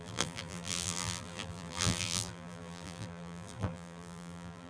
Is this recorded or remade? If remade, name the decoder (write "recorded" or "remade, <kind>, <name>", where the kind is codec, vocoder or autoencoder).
remade, vocoder, BigVGAN v2